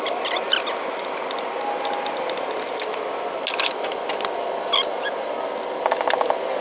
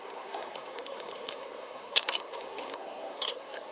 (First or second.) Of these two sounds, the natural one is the first